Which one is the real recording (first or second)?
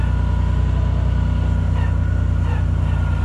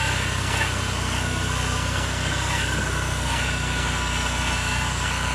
first